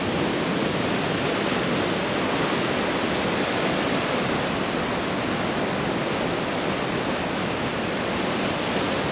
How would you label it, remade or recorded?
recorded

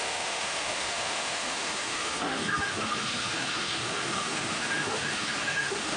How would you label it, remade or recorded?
remade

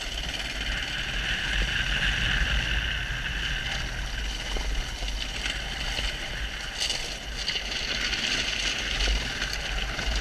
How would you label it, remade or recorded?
recorded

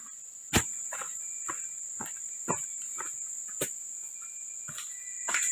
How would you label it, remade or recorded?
recorded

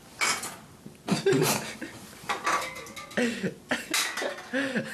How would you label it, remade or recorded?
recorded